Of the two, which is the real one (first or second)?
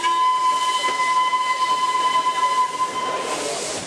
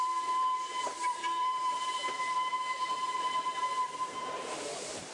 first